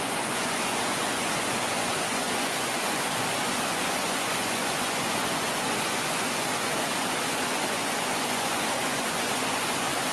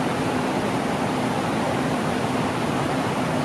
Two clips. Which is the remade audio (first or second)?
first